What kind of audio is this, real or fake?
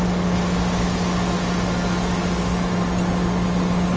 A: real